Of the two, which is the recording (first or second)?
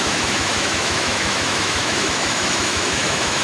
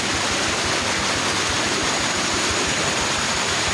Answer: second